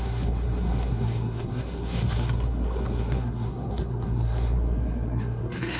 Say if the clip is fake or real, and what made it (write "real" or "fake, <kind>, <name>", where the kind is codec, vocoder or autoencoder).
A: fake, codec, SNAC